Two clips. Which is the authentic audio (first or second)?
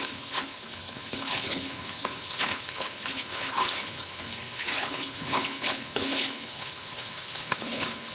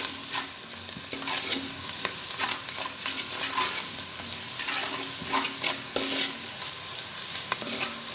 second